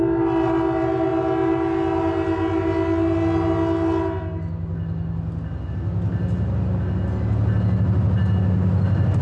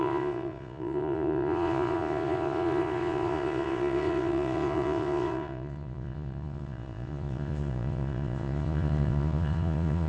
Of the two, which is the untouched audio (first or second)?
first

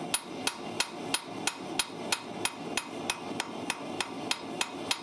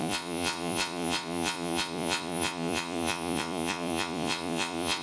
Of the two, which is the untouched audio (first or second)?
first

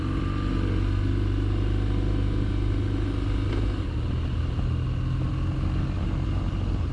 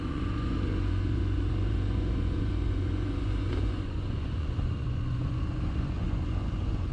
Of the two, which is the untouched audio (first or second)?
first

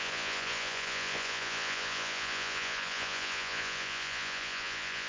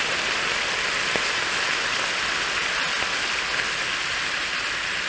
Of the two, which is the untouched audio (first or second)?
second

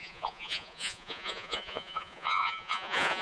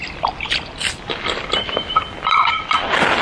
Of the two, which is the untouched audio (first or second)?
second